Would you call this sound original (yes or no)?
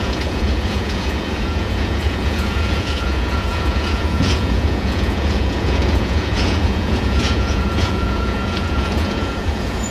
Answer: no